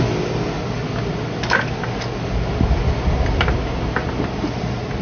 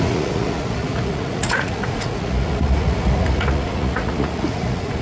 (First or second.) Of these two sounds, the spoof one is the second